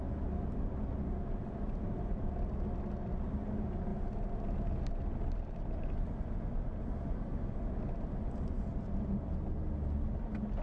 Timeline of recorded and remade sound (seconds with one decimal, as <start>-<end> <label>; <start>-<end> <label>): 0.0-10.6 recorded